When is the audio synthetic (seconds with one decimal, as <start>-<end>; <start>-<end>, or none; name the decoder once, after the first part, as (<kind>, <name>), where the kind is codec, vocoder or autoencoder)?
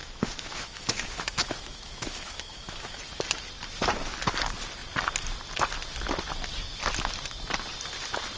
0.0-3.0 (autoencoder, DAC-VAE)